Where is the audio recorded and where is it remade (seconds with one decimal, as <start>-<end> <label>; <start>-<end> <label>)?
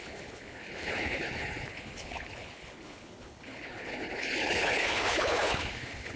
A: 0.0-6.2 remade